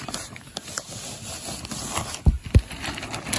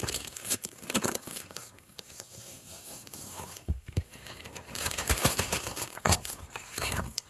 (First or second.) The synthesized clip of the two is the second